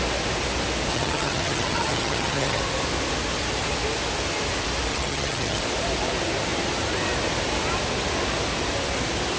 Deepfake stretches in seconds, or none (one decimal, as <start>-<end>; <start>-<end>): 0.9-2.6; 4.9-5.6